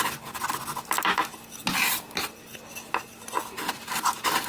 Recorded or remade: recorded